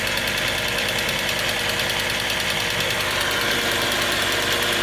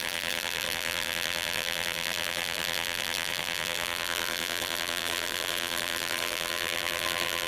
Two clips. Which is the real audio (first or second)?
first